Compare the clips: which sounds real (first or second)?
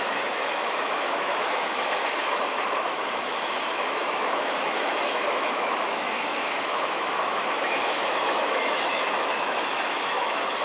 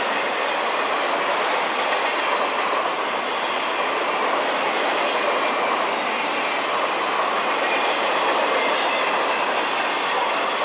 second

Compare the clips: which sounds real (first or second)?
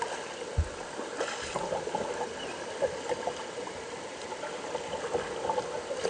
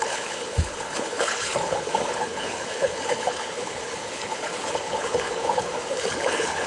first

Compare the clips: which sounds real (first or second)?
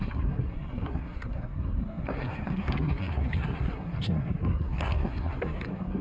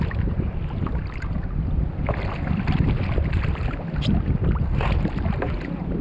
second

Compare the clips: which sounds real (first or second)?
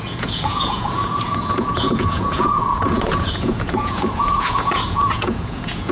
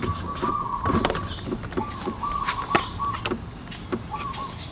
second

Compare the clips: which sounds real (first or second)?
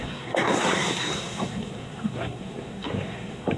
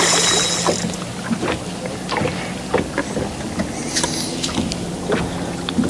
second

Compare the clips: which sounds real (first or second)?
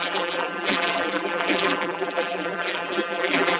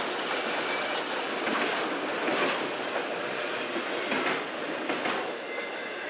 second